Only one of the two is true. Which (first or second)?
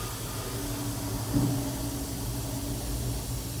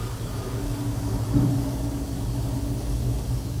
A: first